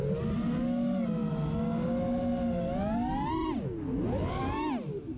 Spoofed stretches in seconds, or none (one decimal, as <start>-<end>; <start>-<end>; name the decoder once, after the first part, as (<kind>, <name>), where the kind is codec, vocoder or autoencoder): none